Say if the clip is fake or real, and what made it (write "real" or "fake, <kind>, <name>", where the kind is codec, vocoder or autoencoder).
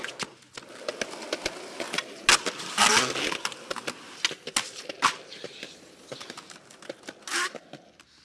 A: real